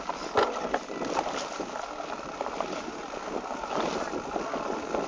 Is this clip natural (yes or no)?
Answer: yes